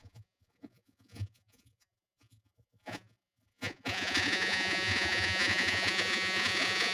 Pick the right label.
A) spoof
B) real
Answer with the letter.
A